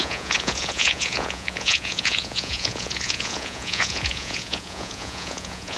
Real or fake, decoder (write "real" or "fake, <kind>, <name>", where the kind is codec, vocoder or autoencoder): fake, vocoder, Vocos